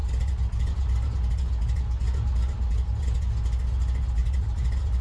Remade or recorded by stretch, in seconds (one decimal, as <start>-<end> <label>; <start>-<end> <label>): 0.0-4.2 recorded; 4.2-5.0 remade